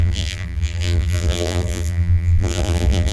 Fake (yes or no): yes